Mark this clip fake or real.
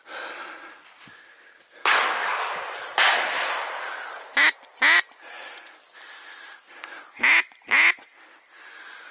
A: real